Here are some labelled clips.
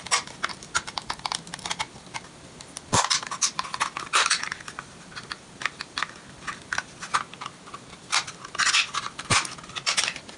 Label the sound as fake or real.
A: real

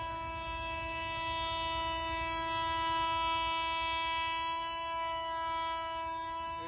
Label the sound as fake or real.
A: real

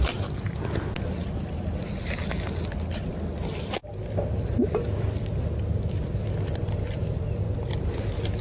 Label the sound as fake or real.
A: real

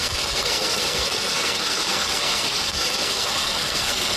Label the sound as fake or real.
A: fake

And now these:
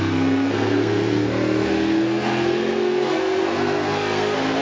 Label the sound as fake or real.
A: fake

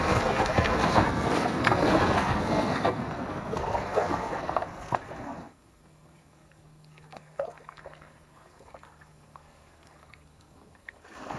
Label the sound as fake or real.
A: fake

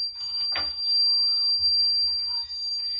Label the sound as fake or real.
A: real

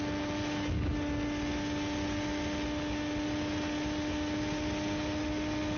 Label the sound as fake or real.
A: real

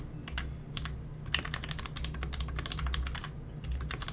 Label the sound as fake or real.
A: real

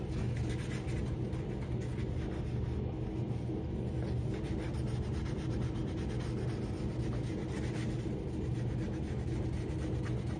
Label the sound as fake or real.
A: real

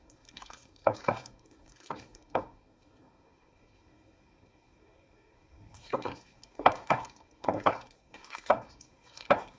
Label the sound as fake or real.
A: fake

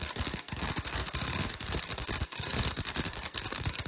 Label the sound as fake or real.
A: fake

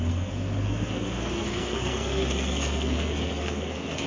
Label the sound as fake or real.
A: fake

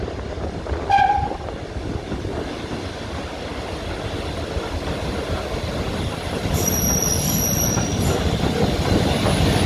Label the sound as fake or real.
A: real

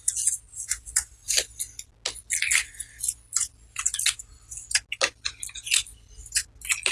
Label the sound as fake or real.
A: real